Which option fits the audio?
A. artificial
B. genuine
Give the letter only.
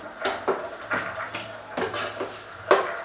B